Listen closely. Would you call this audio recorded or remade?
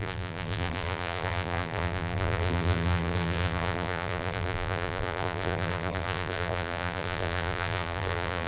remade